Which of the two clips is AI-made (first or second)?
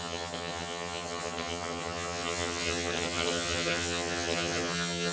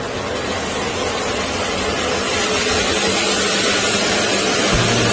first